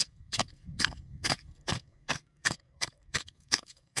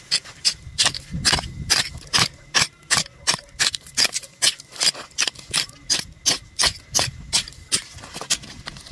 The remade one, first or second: first